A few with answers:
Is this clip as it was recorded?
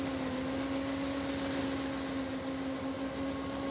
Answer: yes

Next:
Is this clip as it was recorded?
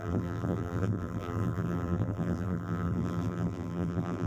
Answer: no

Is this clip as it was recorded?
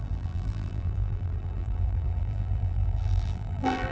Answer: no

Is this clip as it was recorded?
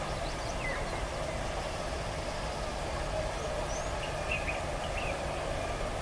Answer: yes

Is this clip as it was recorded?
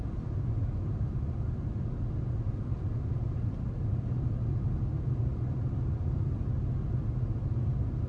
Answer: yes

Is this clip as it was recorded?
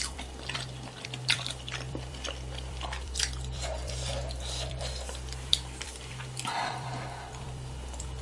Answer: no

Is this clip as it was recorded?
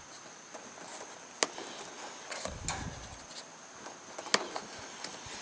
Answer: yes